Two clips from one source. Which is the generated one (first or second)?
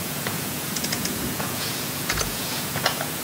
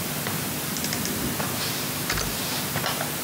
first